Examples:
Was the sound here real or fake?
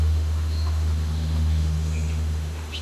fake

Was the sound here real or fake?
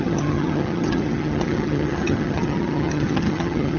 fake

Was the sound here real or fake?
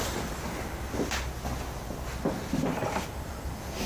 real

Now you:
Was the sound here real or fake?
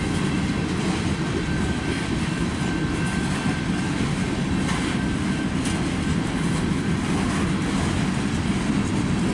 real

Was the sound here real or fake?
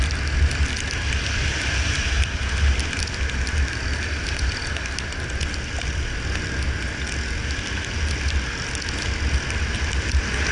real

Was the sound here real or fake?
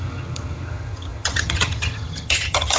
fake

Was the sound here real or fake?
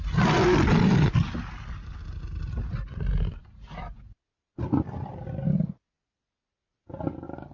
real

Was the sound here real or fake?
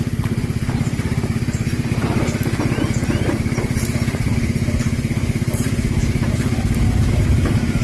fake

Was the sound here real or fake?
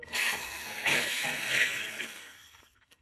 fake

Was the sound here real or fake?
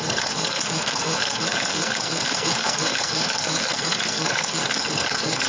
fake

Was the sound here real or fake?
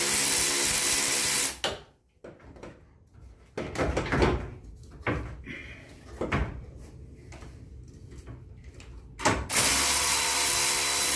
real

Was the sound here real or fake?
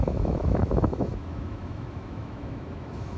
fake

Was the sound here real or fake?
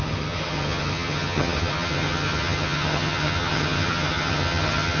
fake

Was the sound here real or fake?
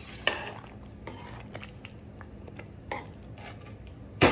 real